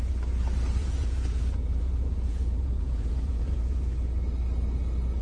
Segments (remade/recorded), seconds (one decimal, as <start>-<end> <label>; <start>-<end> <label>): 0.0-0.8 recorded; 0.8-3.9 remade; 3.9-5.2 recorded